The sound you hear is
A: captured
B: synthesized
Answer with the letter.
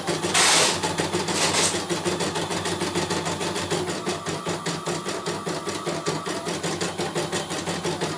A